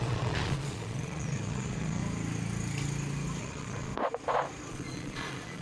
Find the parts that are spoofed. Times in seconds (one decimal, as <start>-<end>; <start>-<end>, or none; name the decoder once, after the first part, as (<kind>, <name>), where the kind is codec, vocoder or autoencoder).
0.0-2.0 (vocoder, Vocos); 3.4-3.9; 4.7-5.6